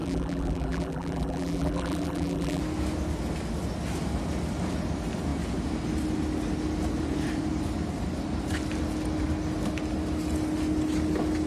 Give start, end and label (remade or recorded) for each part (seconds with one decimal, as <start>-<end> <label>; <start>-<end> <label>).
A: 0.0-2.6 remade; 2.6-11.5 recorded